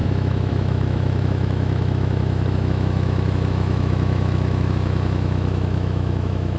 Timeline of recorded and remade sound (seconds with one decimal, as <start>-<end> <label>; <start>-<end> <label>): 0.0-6.6 remade